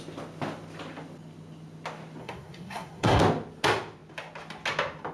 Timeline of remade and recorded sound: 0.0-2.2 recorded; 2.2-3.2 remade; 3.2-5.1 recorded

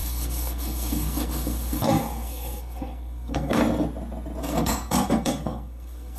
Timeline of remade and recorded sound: 0.0-3.6 remade; 3.6-4.4 recorded; 4.4-6.2 remade

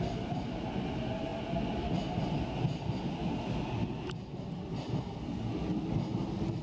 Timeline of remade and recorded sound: 0.0-6.6 recorded

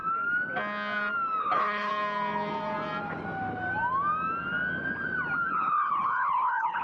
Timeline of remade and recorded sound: 0.0-1.4 recorded; 1.4-1.9 remade; 1.9-5.5 recorded; 5.5-6.8 remade

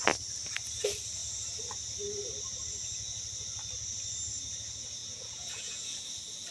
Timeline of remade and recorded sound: 0.0-5.0 recorded; 5.0-6.1 remade; 6.1-6.5 recorded